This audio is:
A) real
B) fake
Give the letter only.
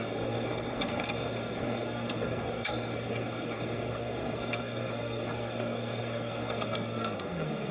B